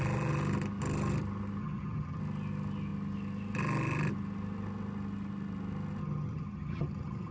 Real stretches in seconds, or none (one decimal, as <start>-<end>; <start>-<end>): 0.0-1.6; 2.2-6.0